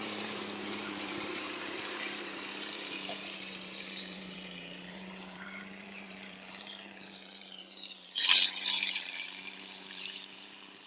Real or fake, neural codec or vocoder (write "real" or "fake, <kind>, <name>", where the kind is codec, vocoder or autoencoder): fake, vocoder, BigVGAN v2